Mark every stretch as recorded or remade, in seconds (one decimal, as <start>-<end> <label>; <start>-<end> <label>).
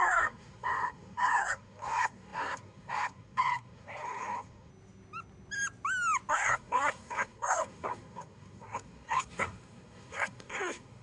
0.0-4.7 remade; 4.7-6.3 recorded; 6.3-11.0 remade